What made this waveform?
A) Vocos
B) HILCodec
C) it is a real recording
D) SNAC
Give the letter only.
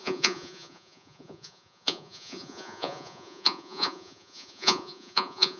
A